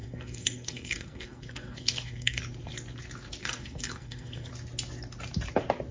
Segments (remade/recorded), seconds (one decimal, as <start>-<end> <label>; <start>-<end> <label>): 0.0-2.4 remade; 2.4-3.4 recorded; 3.4-4.5 remade; 4.5-5.9 recorded